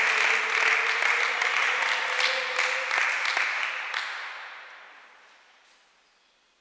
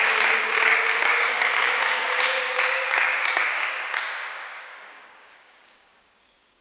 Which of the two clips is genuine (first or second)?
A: first